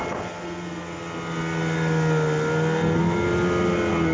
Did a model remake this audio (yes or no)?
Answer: no